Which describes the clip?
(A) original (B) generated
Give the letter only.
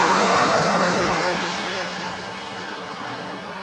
B